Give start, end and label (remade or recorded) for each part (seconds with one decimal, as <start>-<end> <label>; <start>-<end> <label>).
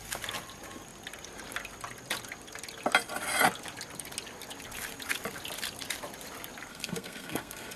0.0-6.7 recorded; 6.7-7.8 remade